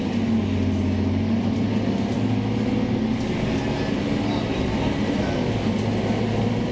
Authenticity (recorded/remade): recorded